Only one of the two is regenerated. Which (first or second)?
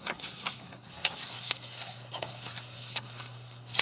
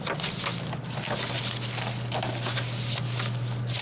first